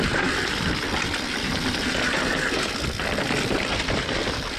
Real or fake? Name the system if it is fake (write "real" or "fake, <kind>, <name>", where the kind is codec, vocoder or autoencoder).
real